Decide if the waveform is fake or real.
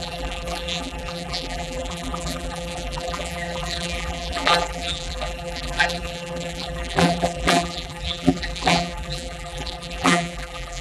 fake